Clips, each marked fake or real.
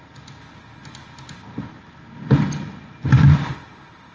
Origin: real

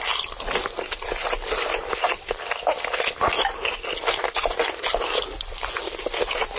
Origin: real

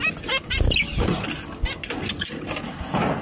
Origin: real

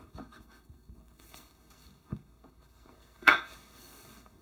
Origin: fake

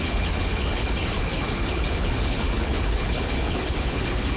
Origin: fake